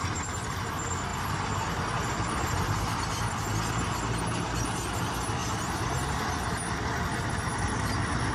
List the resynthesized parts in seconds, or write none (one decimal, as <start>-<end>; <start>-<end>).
none